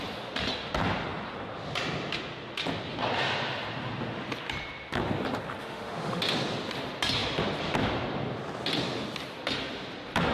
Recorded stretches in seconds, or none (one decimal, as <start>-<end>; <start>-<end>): 0.0-5.6; 6.2-10.3